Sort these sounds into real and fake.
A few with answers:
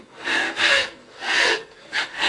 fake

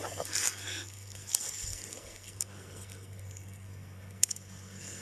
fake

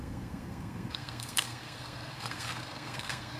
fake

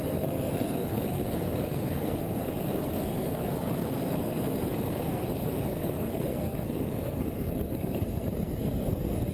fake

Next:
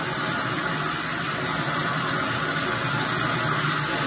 real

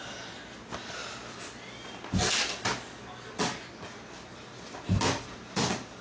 real